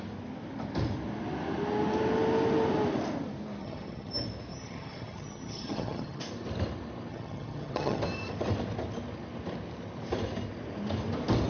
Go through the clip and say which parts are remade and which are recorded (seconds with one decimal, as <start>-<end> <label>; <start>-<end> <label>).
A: 0.0-3.6 recorded; 3.6-4.1 remade; 4.1-4.5 recorded; 4.5-6.2 remade; 6.2-7.1 recorded; 7.1-8.0 remade; 8.0-11.5 recorded